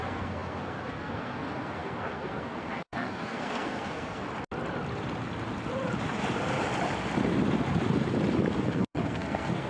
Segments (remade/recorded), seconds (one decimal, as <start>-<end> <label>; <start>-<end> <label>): 0.0-4.2 remade; 4.2-8.6 recorded; 8.6-9.7 remade